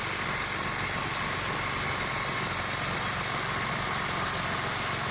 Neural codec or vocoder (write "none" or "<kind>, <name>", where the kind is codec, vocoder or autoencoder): none